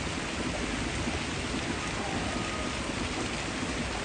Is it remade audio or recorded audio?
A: recorded